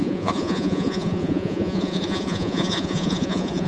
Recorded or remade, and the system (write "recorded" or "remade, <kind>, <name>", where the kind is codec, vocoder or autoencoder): remade, vocoder, Vocos